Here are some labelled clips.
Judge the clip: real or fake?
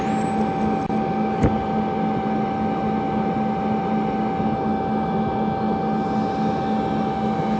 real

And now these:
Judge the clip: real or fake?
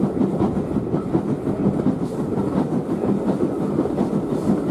real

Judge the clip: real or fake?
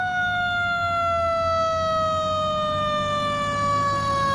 real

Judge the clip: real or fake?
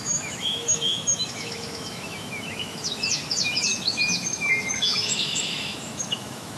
fake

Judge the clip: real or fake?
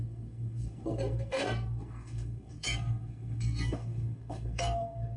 fake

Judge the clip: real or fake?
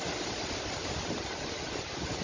real